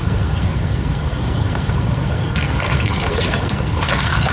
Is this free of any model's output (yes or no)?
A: no